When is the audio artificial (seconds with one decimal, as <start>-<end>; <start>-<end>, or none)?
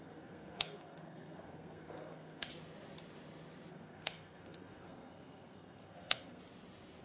0.0-2.5; 3.7-6.4